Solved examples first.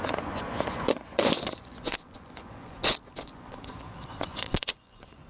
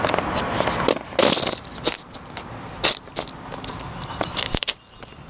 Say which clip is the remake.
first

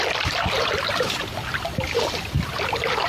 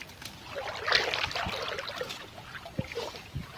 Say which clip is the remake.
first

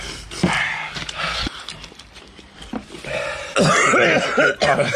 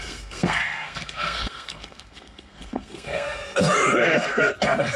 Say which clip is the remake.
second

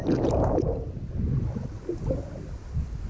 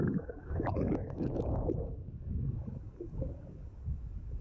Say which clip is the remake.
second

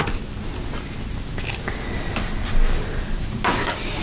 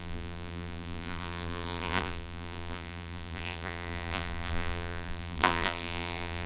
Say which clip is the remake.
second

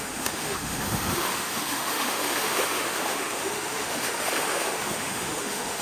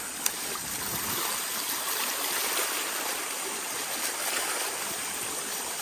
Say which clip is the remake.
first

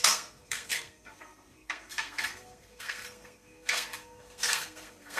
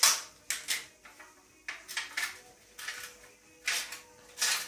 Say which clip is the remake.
first